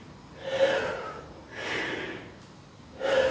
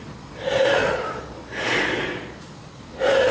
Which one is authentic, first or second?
first